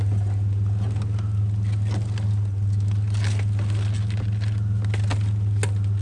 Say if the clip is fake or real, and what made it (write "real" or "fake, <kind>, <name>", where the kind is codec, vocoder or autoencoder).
real